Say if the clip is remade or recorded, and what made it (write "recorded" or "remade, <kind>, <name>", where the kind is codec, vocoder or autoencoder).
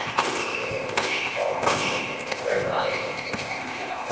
remade, codec, ZipCodec